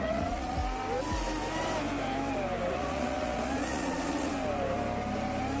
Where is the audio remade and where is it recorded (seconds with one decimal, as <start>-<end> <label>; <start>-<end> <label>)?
0.0-0.6 remade; 0.6-2.7 recorded; 2.7-4.3 remade; 4.3-5.6 recorded